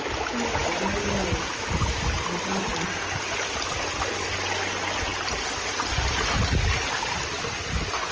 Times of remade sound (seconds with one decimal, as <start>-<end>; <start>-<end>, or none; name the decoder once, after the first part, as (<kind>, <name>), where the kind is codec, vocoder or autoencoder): none